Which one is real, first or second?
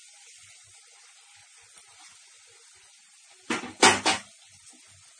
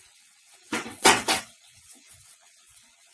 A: first